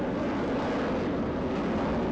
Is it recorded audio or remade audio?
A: recorded